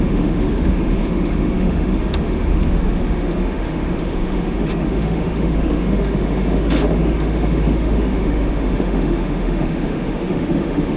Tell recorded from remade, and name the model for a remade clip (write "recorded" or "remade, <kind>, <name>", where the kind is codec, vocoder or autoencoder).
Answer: remade, autoencoder, DAC-VAE